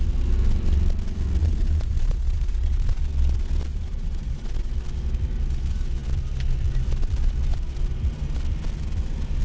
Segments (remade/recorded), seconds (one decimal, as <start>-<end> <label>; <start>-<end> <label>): 0.0-1.4 recorded; 1.4-3.0 remade; 3.0-3.7 recorded; 3.7-4.7 remade; 4.7-9.4 recorded